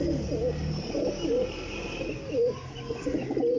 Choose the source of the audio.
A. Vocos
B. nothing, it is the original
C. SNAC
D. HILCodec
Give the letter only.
B